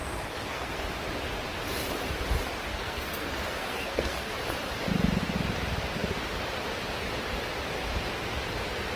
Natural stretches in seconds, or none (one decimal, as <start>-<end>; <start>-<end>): 0.8-2.7; 4.3-9.0